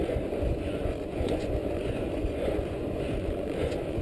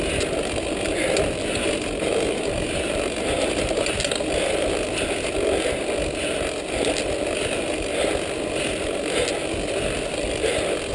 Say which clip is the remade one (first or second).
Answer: first